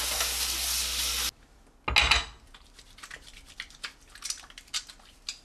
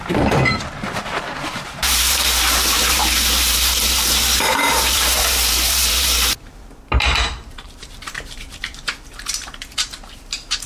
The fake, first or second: second